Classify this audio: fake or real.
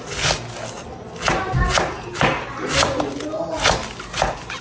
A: real